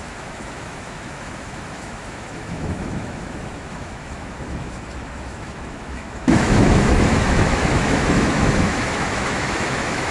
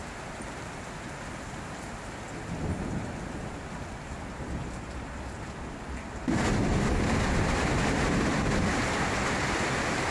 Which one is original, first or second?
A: second